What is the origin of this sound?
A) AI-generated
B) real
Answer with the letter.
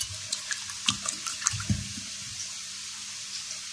B